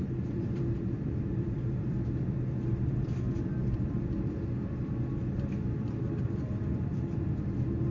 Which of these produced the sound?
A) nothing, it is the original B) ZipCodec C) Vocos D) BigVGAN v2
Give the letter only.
D